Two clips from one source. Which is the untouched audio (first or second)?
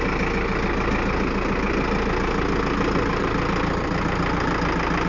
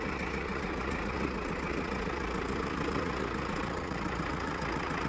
first